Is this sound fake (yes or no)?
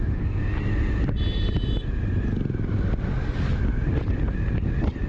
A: no